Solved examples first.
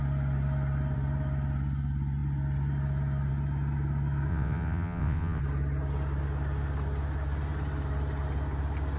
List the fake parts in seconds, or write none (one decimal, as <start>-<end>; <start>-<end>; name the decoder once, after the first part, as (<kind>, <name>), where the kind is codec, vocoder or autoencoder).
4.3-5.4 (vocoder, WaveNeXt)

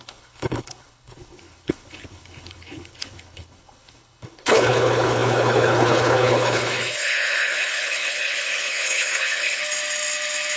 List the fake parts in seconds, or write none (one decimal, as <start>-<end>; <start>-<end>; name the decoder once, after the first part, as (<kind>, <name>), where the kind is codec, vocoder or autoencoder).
0.0-9.6 (codec, HILCodec)

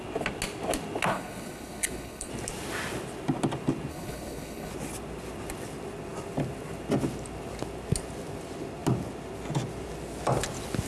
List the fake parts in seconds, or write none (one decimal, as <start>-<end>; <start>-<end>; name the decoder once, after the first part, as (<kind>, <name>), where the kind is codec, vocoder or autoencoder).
1.1-2.3 (codec, HILCodec); 3.9-4.7